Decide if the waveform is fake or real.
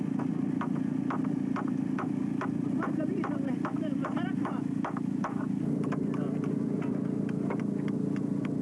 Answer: real